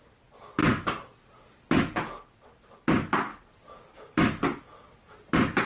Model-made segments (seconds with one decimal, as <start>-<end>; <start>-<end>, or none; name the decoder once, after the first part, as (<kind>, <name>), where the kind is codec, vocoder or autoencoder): 3.3-4.7 (vocoder, BigVGAN v2)